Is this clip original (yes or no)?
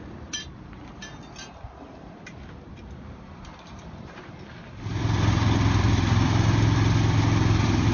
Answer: no